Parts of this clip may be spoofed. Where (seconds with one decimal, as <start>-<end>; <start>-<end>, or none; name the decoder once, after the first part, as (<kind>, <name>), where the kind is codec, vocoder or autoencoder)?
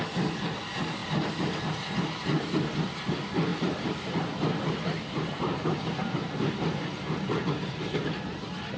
1.0-3.1 (vocoder, BigVGAN v2); 3.5-8.1